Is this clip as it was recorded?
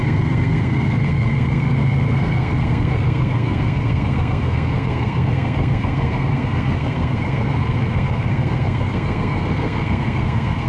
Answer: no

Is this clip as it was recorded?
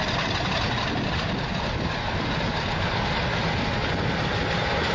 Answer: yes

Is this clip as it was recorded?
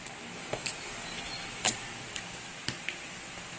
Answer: yes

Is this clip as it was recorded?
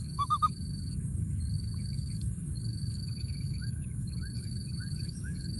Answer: no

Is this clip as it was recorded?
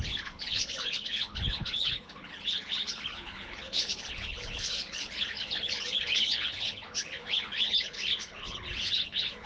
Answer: no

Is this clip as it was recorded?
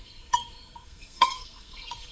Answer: no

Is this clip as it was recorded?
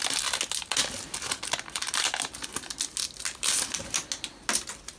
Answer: yes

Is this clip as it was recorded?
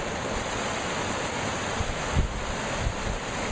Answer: yes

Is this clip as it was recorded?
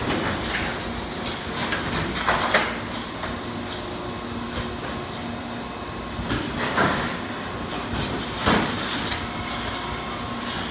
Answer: yes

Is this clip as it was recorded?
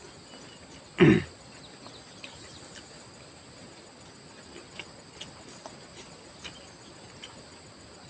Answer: yes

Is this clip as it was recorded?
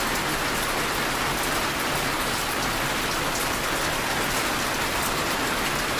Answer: yes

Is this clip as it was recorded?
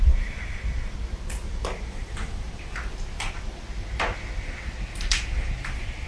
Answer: yes